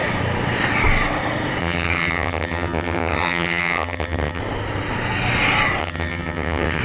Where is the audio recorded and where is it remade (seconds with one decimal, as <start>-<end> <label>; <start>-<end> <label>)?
0.0-1.6 recorded; 1.6-4.4 remade; 4.4-5.8 recorded; 5.8-6.8 remade